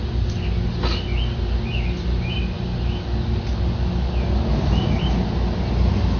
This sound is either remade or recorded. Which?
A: recorded